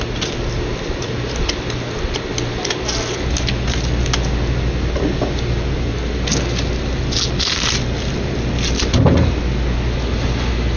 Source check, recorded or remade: recorded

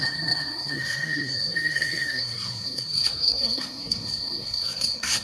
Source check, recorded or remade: remade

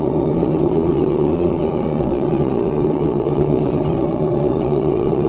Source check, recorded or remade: remade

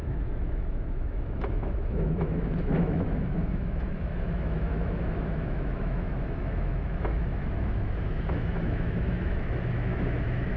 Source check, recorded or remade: remade